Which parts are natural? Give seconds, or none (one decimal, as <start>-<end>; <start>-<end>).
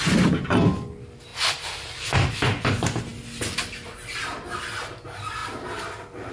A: 0.0-1.3; 2.3-6.3